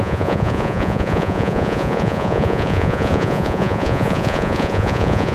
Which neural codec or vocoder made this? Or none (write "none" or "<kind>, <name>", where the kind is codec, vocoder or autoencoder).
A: vocoder, Vocos